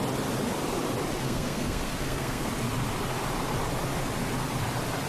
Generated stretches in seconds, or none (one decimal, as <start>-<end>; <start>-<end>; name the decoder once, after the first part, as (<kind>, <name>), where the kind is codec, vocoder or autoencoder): 1.2-2.5 (codec, SNAC)